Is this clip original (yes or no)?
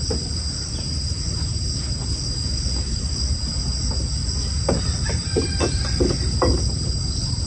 yes